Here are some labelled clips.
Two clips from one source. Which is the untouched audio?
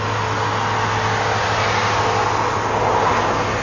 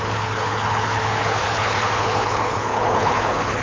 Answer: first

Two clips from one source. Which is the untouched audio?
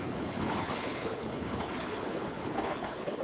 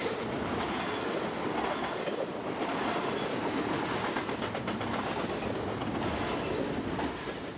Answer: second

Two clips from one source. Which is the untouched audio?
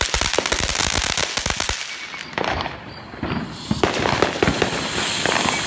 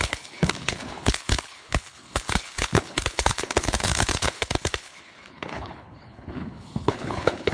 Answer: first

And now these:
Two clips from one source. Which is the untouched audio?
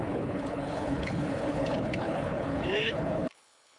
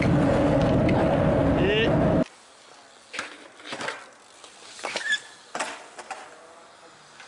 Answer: second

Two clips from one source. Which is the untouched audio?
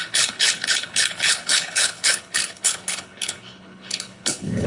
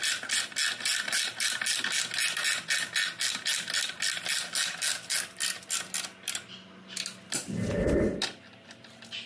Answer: second